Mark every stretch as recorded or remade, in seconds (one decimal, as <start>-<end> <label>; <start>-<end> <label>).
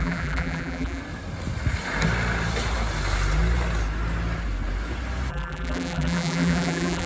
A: 0.0-1.0 remade; 1.0-5.3 recorded; 5.3-7.1 remade